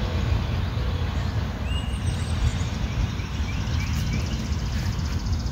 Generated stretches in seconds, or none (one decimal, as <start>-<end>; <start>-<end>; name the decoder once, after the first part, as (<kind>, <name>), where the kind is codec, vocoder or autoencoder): none